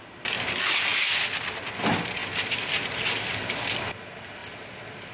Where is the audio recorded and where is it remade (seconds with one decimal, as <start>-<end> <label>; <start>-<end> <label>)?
0.0-5.1 recorded

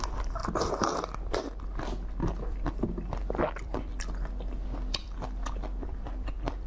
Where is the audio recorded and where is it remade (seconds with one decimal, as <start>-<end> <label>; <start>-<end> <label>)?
0.0-0.4 remade; 0.4-2.3 recorded; 2.3-3.9 remade; 3.9-4.9 recorded; 4.9-6.7 remade

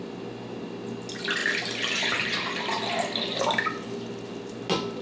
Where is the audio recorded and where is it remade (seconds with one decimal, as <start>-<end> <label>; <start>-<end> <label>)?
0.0-1.4 recorded; 1.4-2.8 remade; 2.8-5.0 recorded

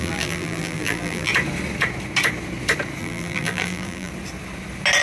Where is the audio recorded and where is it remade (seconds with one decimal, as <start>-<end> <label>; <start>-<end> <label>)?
0.0-1.3 remade; 1.3-3.0 recorded; 3.0-4.1 remade; 4.1-5.0 recorded

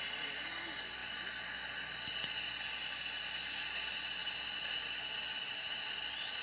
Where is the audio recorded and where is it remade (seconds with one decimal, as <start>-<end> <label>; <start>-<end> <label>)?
0.0-6.4 recorded